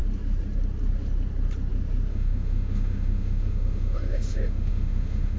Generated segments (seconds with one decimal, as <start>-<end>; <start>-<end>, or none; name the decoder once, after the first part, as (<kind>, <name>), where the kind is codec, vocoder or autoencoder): 2.1-5.4 (autoencoder, DAC-VAE)